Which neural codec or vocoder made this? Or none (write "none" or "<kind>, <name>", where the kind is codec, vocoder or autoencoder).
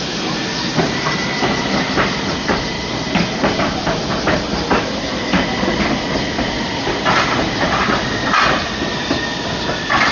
none